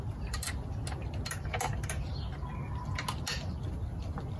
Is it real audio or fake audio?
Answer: real